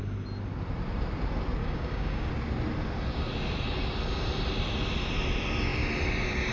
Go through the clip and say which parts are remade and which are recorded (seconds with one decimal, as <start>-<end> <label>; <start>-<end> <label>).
0.0-1.6 recorded; 1.6-2.3 remade; 2.3-6.5 recorded